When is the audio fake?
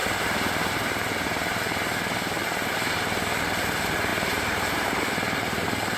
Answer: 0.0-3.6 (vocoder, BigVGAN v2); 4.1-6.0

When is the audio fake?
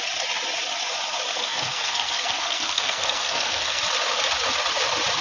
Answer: 1.3-3.8 (codec, SNAC)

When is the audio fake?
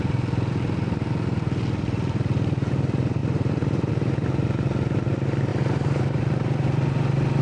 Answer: 3.2-3.9 (vocoder, BigVGAN v2); 5.5-6.2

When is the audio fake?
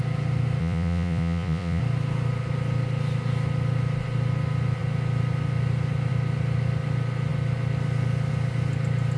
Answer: 0.6-1.8 (vocoder, Vocos)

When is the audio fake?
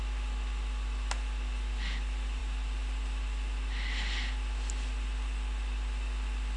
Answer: none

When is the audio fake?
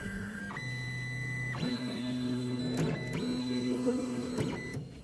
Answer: 0.0-0.4 (codec, SNAC); 1.7-2.6; 3.4-4.3